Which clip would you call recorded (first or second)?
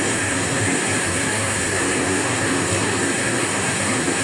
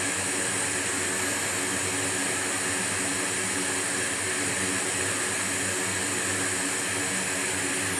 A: second